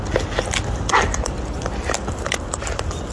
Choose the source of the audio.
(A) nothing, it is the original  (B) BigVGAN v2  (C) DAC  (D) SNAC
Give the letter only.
A